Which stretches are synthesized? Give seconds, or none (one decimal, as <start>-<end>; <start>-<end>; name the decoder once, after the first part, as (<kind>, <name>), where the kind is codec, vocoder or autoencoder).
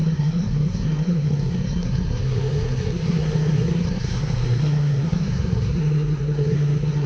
0.0-7.1 (codec, SNAC)